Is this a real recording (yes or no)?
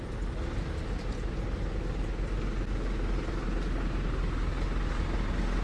yes